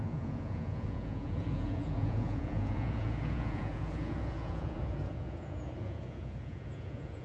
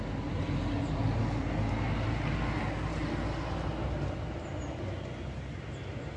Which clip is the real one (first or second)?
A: second